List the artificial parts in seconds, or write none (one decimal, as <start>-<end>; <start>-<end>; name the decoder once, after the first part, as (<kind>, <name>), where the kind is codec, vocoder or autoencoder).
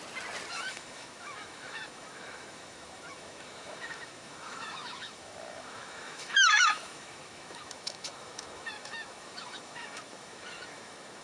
0.5-11.2 (autoencoder, DAC-VAE)